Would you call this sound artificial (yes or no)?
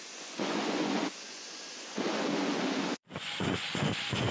yes